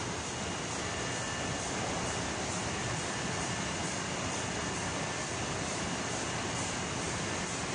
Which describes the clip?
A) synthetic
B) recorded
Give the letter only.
B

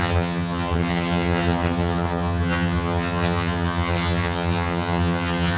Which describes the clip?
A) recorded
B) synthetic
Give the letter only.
B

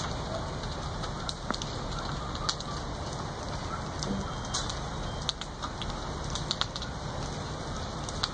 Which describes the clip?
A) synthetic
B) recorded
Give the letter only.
B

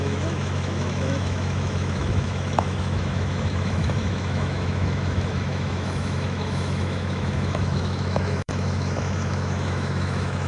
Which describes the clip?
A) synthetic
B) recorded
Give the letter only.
A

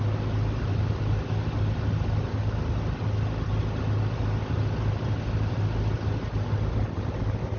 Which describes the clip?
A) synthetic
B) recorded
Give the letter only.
B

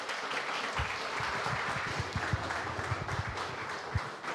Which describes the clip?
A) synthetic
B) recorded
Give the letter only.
A